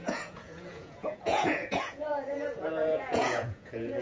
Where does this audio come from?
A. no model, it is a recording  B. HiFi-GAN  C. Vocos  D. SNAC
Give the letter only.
C